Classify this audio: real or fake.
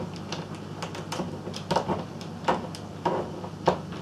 real